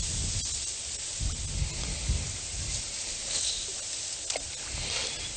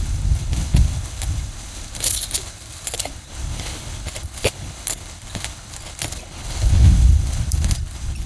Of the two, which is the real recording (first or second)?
first